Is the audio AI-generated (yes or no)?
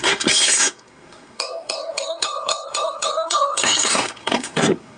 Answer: yes